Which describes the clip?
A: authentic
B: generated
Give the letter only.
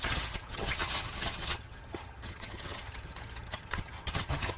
B